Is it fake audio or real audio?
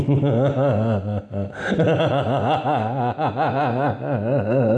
real